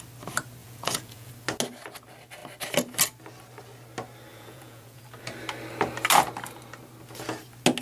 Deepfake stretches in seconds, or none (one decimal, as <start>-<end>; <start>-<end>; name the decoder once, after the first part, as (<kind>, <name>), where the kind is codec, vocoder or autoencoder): 0.6-1.3 (vocoder, Vocos); 4.3-5.0